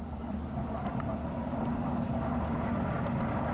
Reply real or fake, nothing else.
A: real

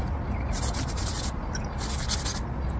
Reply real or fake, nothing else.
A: real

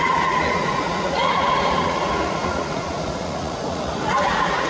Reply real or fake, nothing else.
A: fake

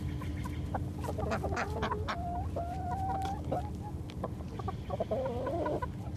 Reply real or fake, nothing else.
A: real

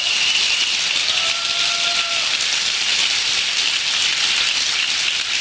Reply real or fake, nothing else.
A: real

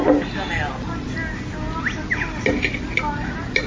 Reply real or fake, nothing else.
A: real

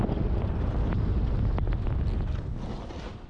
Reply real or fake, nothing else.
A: real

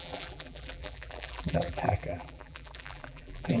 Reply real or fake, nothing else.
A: fake